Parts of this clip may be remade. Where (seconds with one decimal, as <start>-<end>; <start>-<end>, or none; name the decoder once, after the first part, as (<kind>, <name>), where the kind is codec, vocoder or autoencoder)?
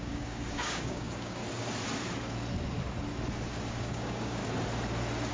0.0-1.4 (codec, DAC); 3.7-4.4